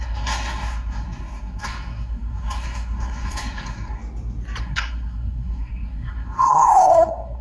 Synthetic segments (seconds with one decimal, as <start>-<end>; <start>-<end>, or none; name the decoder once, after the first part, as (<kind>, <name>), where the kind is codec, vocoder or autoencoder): 0.0-4.0 (codec, SNAC); 4.6-7.4